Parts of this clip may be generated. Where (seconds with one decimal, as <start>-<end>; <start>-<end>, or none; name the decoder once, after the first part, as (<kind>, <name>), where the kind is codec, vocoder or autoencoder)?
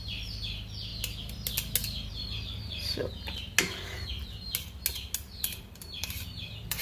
0.0-0.9 (vocoder, BigVGAN v2); 2.1-3.0; 5.3-6.8